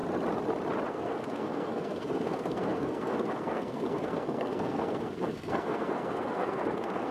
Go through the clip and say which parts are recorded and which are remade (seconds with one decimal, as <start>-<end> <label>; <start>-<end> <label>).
0.0-0.9 recorded; 0.9-7.1 remade